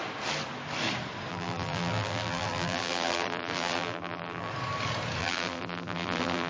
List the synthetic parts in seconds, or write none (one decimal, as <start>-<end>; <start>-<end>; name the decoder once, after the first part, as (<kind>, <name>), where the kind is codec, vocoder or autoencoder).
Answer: 1.3-4.5 (vocoder, BigVGAN v2); 5.2-6.5